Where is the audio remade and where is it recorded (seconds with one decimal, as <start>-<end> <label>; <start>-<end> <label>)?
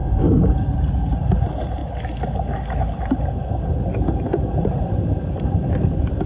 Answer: 0.0-6.3 recorded